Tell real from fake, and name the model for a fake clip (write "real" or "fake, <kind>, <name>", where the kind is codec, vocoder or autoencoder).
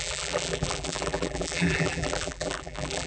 fake, vocoder, BigVGAN v2